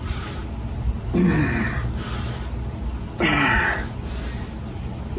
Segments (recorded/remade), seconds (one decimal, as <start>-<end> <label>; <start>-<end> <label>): 0.0-5.2 recorded